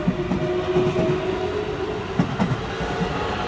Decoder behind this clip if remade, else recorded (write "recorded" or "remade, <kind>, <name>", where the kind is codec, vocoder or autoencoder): recorded